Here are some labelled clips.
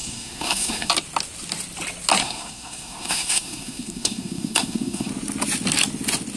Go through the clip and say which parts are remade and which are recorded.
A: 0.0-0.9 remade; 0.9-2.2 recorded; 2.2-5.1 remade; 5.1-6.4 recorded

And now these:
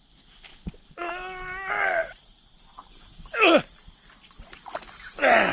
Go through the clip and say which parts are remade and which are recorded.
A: 0.0-0.5 recorded; 0.5-1.1 remade; 1.1-5.5 recorded

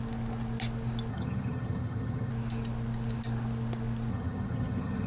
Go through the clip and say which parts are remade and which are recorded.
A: 0.0-1.1 recorded; 1.1-2.3 remade; 2.3-4.1 recorded; 4.1-5.1 remade

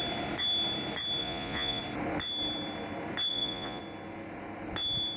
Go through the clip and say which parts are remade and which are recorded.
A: 0.0-1.2 recorded; 1.2-1.8 remade; 1.8-3.3 recorded; 3.3-3.8 remade; 3.8-5.2 recorded

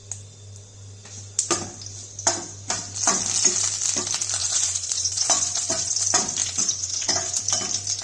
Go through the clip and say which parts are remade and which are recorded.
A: 0.0-4.4 recorded; 4.4-5.9 remade; 5.9-6.4 recorded; 6.4-7.4 remade; 7.4-8.0 recorded